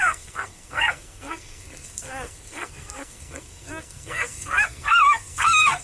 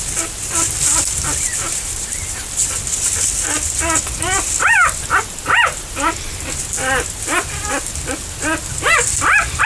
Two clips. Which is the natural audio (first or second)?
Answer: second